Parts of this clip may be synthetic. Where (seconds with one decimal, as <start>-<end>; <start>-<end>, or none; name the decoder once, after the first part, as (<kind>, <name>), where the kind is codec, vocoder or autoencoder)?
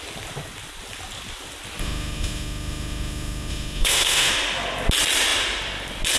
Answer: 1.8-4.3 (autoencoder, DAC-VAE)